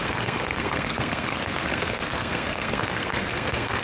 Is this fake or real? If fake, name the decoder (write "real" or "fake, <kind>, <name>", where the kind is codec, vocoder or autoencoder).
fake, codec, SNAC